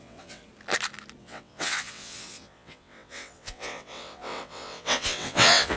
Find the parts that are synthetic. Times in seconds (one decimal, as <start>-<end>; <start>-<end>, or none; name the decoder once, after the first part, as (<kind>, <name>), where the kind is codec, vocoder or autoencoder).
0.0-0.4 (vocoder, WaveNeXt); 1.2-5.8